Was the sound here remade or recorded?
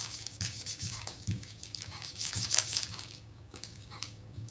remade